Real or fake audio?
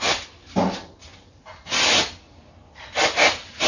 real